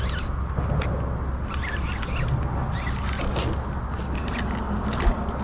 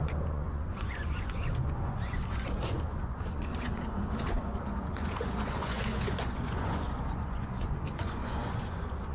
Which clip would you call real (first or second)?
first